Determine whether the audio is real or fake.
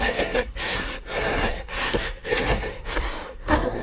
fake